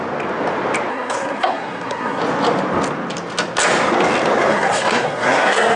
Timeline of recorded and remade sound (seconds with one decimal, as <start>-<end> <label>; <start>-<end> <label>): 0.0-0.9 recorded; 0.9-2.2 remade; 2.2-4.5 recorded; 4.5-5.8 remade